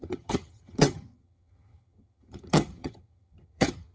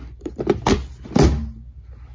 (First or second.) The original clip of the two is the second